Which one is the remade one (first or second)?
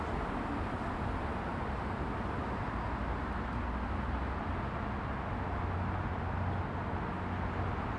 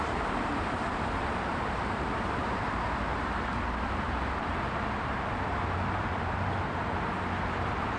second